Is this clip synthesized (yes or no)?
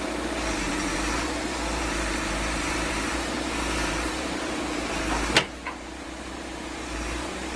yes